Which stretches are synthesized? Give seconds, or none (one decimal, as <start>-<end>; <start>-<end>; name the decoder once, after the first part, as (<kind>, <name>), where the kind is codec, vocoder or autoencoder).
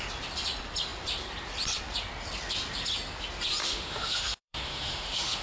3.6-5.4 (autoencoder, DAC-VAE)